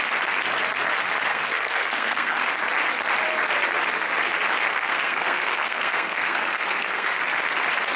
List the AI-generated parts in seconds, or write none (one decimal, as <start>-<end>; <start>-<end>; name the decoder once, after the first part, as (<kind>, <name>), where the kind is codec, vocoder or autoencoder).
1.3-2.5 (codec, SNAC); 4.7-7.2